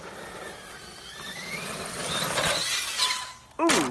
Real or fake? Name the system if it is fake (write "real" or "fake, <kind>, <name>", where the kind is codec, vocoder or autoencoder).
real